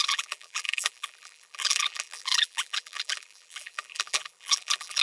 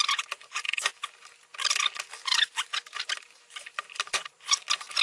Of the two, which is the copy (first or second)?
first